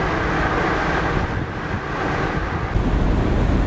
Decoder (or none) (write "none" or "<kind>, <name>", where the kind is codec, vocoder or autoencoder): none